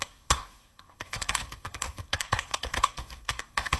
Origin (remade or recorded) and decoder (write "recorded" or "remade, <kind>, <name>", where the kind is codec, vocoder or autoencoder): remade, codec, SNAC